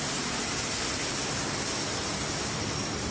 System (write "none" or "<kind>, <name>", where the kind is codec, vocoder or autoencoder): none